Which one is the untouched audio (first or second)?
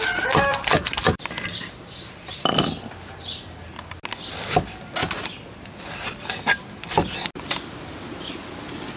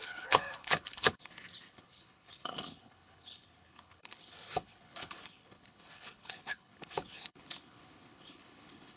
first